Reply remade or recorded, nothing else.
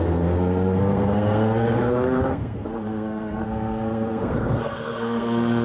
remade